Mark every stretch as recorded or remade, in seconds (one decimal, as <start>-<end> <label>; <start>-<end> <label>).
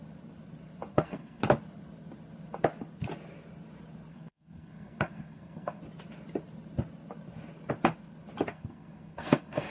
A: 0.0-0.9 recorded; 0.9-1.4 remade; 1.4-4.1 recorded; 4.1-5.8 remade; 5.8-8.5 recorded; 8.5-9.7 remade